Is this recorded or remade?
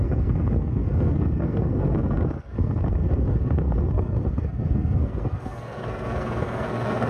remade